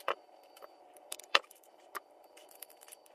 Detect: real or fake fake